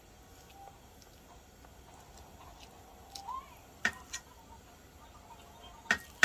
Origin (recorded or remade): recorded